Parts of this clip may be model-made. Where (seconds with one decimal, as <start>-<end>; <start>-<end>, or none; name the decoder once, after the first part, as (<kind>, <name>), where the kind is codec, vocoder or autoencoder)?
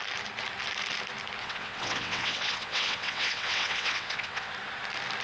1.4-4.5 (vocoder, WaveNeXt)